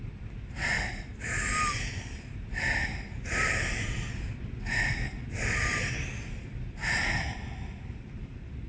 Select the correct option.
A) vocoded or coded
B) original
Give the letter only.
B